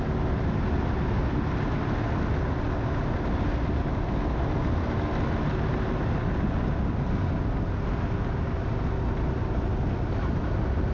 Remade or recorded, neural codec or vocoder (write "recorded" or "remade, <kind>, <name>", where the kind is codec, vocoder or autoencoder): recorded